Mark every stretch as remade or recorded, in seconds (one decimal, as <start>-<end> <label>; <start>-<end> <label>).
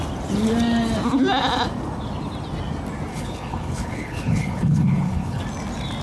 0.0-3.1 recorded; 3.1-5.4 remade; 5.4-6.0 recorded